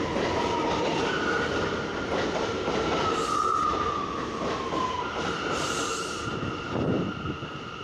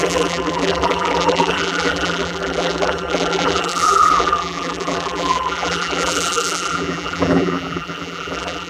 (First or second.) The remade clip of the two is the second